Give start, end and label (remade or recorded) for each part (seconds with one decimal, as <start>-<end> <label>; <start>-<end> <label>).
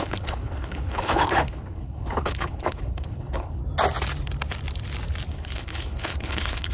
0.0-3.6 remade; 3.6-5.3 recorded; 5.3-6.7 remade